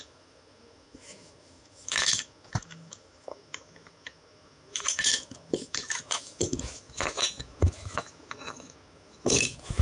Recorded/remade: remade